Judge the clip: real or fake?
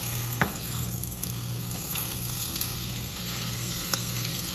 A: fake